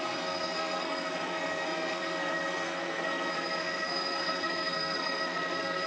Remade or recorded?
remade